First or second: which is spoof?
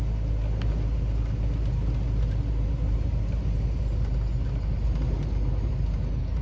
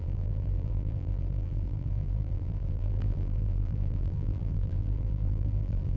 second